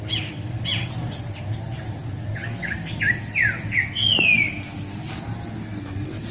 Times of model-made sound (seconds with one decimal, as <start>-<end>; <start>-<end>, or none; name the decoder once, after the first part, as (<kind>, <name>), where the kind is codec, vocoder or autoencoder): none